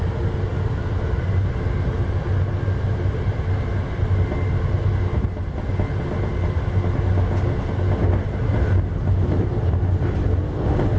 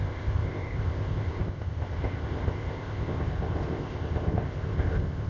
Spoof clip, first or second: second